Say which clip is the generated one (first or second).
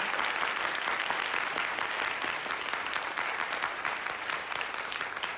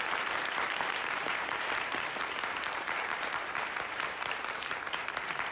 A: second